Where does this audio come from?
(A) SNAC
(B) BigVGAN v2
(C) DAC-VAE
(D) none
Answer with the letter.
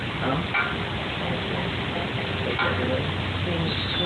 D